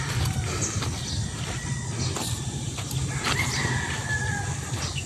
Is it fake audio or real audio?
real